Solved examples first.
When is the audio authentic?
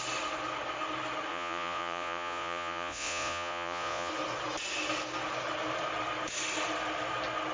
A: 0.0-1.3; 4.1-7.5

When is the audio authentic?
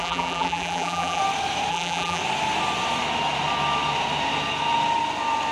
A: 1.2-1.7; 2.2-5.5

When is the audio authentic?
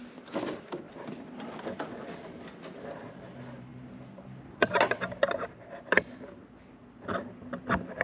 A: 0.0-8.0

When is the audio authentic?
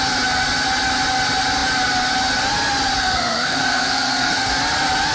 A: 0.0-3.0; 4.5-5.1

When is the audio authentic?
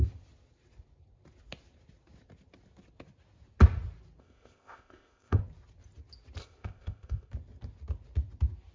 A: 0.0-4.2; 5.4-6.4; 7.3-8.7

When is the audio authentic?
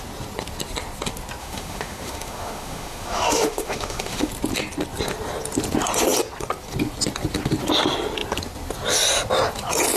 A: 0.0-1.4; 4.3-10.0